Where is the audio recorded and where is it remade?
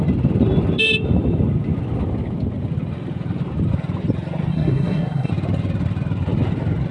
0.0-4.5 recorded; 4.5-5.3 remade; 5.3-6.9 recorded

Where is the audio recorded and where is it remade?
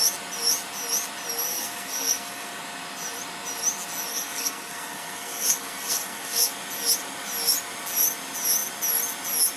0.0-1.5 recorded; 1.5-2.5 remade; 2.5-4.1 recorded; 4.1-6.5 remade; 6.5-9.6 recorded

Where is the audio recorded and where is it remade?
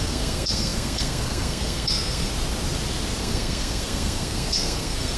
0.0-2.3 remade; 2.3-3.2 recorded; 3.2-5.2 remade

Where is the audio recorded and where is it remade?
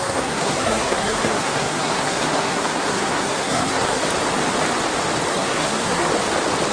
0.0-4.0 remade; 4.0-5.3 recorded; 5.3-6.1 remade; 6.1-6.7 recorded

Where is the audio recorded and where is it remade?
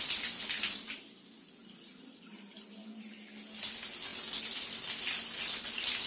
0.0-6.1 recorded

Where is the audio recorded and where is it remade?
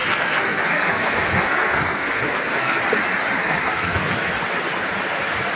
0.0-2.8 remade; 2.8-3.4 recorded; 3.4-4.3 remade; 4.3-5.6 recorded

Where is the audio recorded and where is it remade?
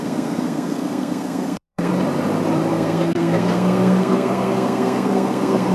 0.0-1.9 remade; 1.9-2.7 recorded; 2.7-5.7 remade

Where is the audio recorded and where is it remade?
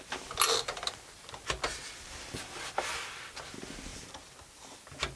0.0-5.2 recorded